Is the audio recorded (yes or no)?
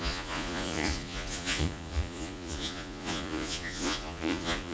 no